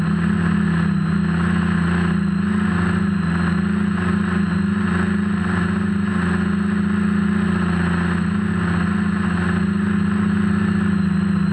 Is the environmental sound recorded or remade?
recorded